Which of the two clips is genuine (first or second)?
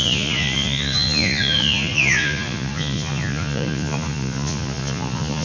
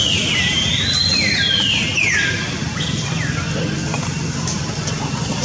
second